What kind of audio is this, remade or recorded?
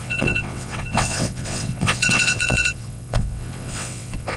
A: remade